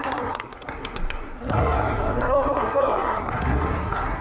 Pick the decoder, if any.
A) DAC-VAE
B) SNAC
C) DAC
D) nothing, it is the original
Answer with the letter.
B